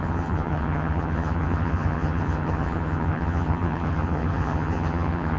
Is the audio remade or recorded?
remade